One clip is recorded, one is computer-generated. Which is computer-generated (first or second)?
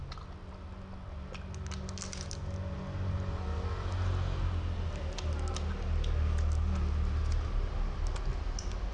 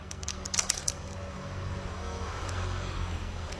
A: second